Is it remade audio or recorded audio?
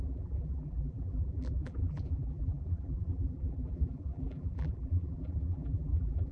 remade